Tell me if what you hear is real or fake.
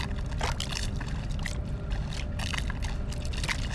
real